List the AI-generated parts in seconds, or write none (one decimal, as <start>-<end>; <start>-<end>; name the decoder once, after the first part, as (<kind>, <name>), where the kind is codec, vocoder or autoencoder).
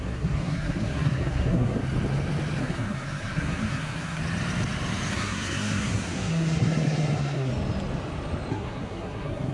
0.0-1.8 (codec, SNAC); 2.6-4.2; 5.1-7.5; 8.5-9.5